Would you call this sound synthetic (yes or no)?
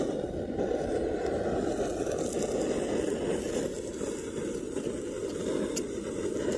no